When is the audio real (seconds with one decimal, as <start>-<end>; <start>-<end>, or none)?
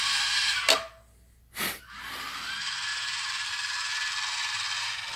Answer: 0.0-2.9; 3.5-5.2